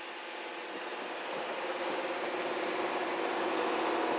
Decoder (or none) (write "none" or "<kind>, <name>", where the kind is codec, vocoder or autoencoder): none